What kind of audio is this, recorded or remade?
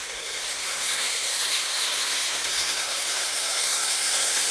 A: remade